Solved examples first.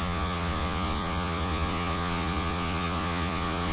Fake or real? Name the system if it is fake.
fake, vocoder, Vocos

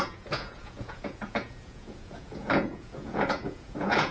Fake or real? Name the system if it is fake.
fake, vocoder, Vocos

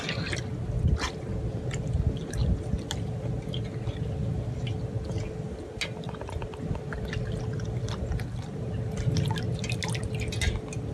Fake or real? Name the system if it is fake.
real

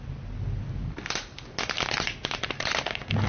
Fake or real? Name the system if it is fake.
real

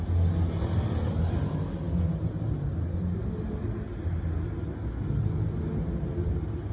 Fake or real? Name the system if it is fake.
real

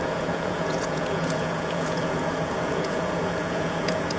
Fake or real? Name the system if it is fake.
fake, vocoder, Vocos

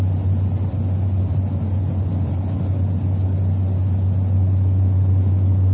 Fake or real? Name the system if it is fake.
real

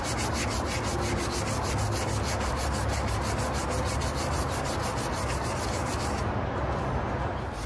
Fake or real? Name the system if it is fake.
real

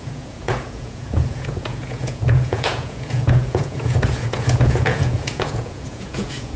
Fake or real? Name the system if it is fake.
fake, vocoder, Vocos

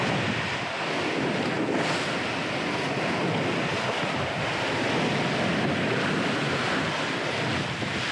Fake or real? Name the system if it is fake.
real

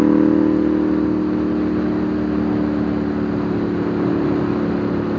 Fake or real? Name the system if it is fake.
real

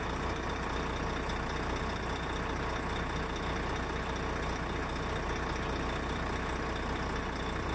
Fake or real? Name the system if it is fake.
real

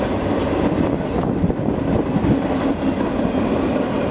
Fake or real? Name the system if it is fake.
real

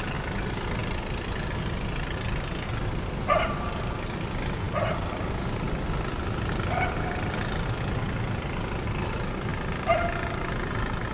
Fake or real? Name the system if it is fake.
real